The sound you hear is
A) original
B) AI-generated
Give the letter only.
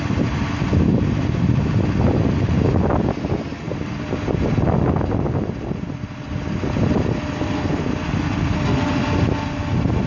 A